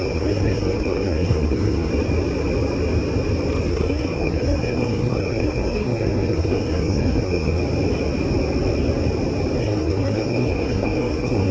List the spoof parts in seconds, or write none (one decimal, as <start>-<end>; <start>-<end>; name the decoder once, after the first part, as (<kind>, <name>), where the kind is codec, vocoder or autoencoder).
0.0-1.9 (codec, SNAC); 3.7-7.6; 9.6-11.5